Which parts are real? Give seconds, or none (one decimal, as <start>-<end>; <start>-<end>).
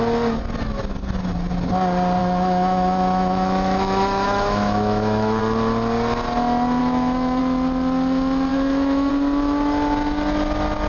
0.0-2.2; 5.4-6.8; 7.4-8.5; 9.1-10.9